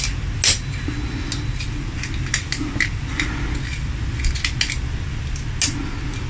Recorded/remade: recorded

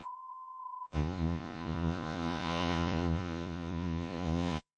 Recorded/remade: remade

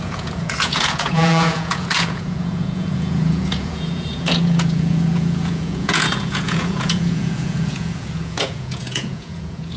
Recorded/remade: remade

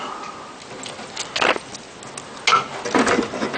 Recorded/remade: recorded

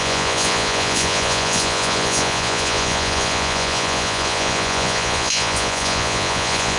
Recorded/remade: remade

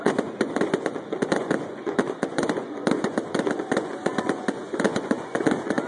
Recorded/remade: remade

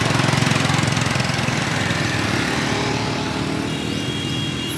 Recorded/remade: recorded